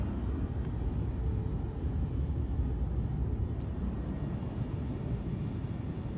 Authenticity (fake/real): real